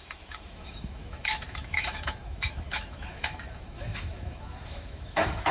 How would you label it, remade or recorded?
remade